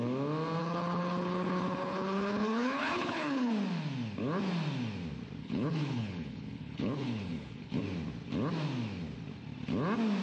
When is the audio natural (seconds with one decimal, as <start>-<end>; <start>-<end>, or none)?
0.0-0.6; 3.5-5.4; 7.8-10.2